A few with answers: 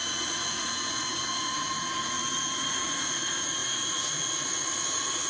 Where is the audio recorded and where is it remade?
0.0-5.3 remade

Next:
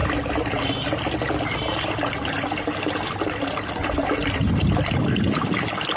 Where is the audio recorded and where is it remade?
0.0-6.0 recorded

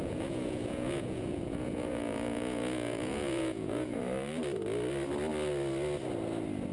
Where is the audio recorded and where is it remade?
0.0-4.0 remade; 4.0-6.7 recorded

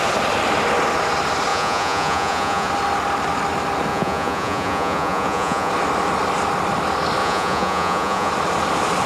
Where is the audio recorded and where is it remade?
0.0-1.5 recorded; 1.5-2.7 remade; 2.7-3.9 recorded; 3.9-5.7 remade; 5.7-7.2 recorded; 7.2-8.3 remade; 8.3-9.1 recorded

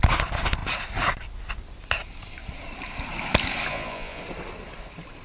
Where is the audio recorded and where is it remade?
0.0-3.7 recorded; 3.7-4.2 remade; 4.2-5.2 recorded

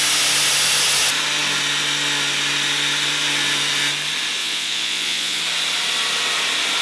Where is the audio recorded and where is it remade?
0.0-4.4 recorded; 4.4-5.4 remade; 5.4-6.8 recorded

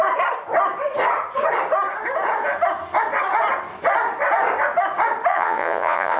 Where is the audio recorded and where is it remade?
0.0-5.3 recorded; 5.3-6.2 remade

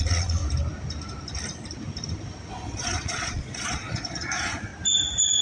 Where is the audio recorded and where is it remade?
0.0-0.4 remade; 0.4-2.5 recorded; 2.5-4.7 remade; 4.7-5.4 recorded